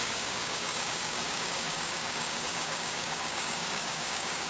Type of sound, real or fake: fake